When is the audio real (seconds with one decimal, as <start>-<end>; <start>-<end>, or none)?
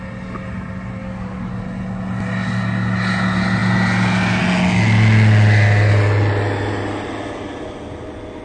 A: 0.0-1.0; 1.5-8.4